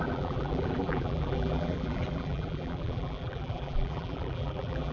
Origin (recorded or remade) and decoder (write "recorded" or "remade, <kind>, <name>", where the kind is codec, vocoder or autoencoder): remade, vocoder, BigVGAN v2